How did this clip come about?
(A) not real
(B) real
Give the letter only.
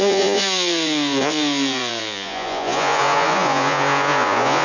A